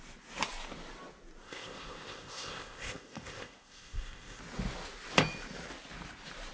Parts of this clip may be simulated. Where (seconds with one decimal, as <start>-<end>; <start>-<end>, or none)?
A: 1.4-4.4